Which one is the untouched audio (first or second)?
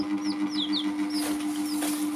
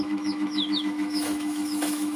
first